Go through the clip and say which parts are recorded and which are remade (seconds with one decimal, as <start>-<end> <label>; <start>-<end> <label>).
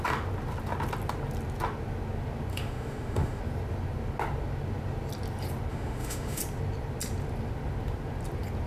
0.0-2.5 recorded; 2.5-3.4 remade; 3.4-5.7 recorded; 5.7-6.4 remade; 6.4-8.7 recorded